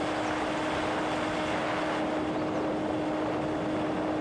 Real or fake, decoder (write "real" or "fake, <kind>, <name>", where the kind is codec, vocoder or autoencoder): real